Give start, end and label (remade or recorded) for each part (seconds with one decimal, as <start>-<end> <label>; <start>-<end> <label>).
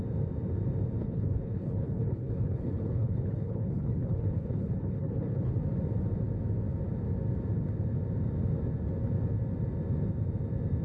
0.0-1.0 recorded; 1.0-5.5 remade; 5.5-10.8 recorded